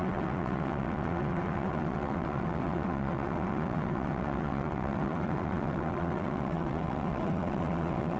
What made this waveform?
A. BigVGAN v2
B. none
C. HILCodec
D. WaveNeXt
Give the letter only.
D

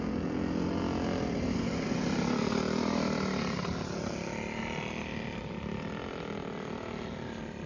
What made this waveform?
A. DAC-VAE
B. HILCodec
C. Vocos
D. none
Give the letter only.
D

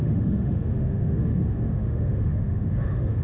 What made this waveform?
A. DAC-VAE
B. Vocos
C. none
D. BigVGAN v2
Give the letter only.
A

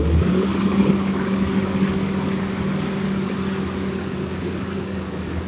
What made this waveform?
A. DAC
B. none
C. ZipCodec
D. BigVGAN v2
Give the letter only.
A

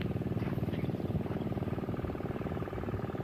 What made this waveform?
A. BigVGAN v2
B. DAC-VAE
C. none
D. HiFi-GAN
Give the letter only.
A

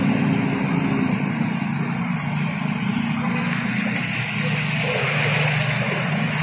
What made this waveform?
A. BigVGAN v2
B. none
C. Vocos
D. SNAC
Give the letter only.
B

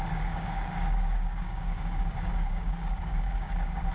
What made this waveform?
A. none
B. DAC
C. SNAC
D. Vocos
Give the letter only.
B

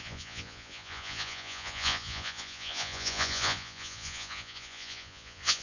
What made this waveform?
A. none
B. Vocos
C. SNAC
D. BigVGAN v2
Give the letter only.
B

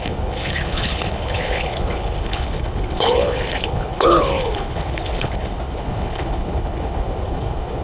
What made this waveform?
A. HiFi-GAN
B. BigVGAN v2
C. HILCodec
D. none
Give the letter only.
C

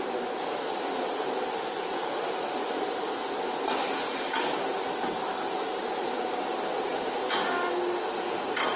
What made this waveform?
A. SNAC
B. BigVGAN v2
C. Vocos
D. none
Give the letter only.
D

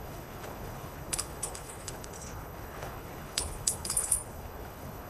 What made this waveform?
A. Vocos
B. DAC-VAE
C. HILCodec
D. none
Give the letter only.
C